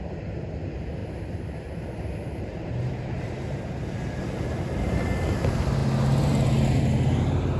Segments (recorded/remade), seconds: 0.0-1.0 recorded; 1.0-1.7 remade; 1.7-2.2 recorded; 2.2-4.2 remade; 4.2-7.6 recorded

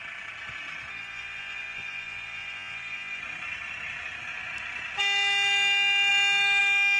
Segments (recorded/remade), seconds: 0.0-0.9 recorded; 0.9-3.2 remade; 3.2-7.0 recorded